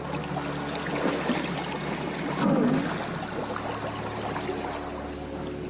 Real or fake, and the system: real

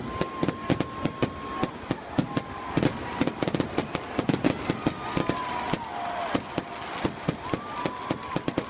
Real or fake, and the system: real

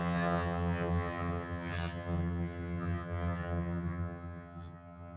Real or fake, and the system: fake, vocoder, HiFi-GAN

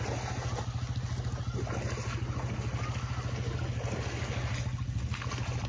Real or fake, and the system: real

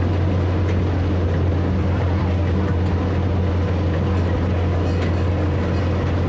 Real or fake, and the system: real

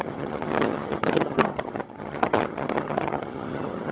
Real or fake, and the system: fake, vocoder, HiFi-GAN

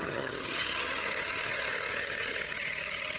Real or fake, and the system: fake, vocoder, HiFi-GAN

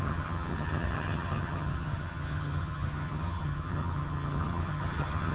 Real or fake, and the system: fake, vocoder, HiFi-GAN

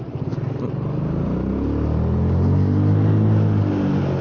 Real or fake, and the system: real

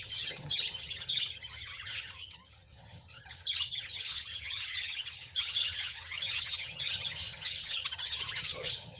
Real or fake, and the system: fake, vocoder, HiFi-GAN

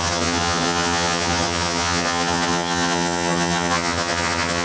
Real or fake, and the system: fake, vocoder, HiFi-GAN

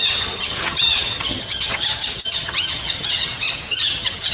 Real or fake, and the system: fake, vocoder, HiFi-GAN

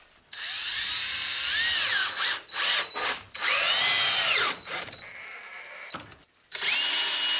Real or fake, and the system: real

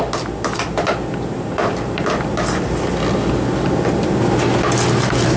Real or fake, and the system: real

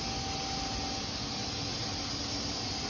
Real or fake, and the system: real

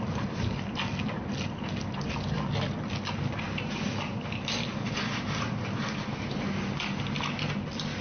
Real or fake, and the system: real